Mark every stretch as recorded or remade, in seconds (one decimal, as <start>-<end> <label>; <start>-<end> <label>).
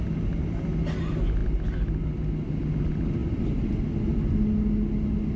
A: 0.0-5.4 recorded